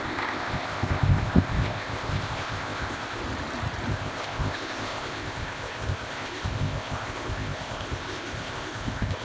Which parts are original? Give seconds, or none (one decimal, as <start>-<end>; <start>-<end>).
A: 3.2-3.9